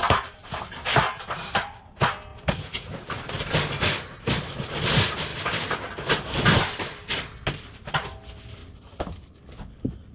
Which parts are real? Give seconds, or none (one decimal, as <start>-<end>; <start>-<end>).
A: 0.0-2.3; 3.2-10.1